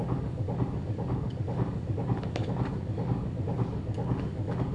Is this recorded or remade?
remade